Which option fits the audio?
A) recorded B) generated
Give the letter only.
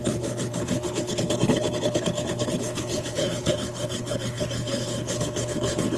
B